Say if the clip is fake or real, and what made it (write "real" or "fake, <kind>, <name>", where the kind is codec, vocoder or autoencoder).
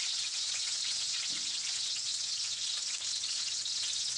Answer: fake, vocoder, Vocos